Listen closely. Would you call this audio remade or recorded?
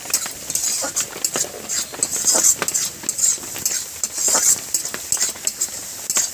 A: recorded